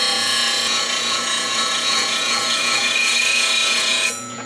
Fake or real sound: fake